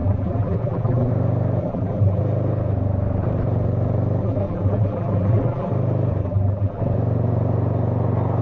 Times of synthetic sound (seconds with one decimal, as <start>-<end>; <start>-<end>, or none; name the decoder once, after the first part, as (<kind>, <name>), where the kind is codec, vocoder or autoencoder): 0.0-1.1 (vocoder, BigVGAN v2); 1.6-2.2; 4.2-5.7; 6.2-6.8